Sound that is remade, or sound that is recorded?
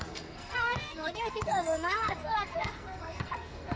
remade